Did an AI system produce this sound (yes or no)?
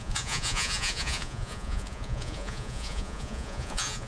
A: yes